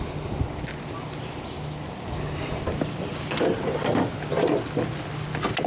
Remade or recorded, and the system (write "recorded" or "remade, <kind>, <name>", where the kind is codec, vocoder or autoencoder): recorded